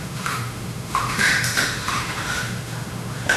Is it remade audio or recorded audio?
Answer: remade